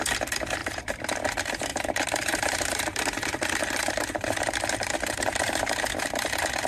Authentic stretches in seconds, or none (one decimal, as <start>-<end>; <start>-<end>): 0.0-0.6; 1.2-1.7; 5.7-6.7